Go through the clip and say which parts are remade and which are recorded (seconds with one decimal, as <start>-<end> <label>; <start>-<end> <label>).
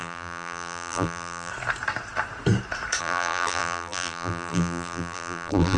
0.0-1.5 remade; 1.5-3.0 recorded; 3.0-5.8 remade